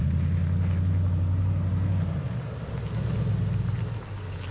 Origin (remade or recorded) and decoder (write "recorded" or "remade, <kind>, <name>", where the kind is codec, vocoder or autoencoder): recorded